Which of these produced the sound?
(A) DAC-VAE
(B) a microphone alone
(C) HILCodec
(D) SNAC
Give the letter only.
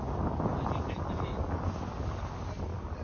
B